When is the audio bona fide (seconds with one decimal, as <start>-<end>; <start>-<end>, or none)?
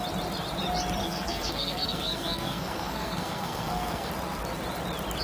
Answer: 0.0-1.0; 4.1-5.2